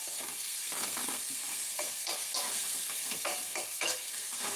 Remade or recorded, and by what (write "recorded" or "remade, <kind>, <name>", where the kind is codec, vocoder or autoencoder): remade, codec, SNAC